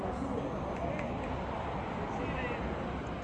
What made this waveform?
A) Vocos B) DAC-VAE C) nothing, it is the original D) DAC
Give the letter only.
C